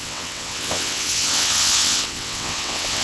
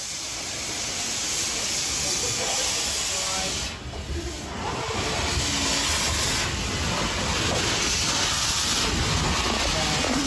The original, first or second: second